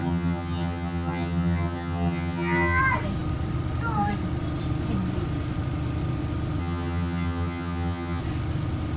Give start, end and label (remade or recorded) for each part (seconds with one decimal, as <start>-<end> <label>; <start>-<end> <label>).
0.0-2.8 remade; 2.8-6.6 recorded; 6.6-8.2 remade; 8.2-9.0 recorded

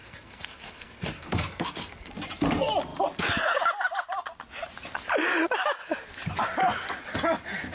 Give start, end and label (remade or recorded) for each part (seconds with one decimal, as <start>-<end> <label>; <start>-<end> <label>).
0.0-2.1 remade; 2.1-7.7 recorded

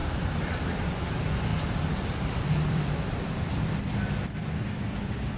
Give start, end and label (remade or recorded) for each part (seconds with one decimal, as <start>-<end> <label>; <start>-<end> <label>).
0.0-1.1 remade; 1.1-1.5 recorded; 1.5-3.5 remade; 3.5-5.4 recorded

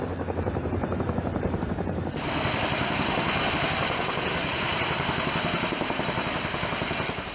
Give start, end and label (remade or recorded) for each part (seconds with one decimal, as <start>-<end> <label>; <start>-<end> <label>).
0.0-1.0 remade; 1.0-4.7 recorded; 4.7-5.3 remade; 5.3-7.3 recorded